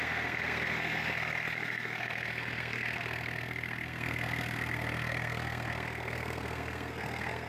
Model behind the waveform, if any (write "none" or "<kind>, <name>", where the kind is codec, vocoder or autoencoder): codec, SNAC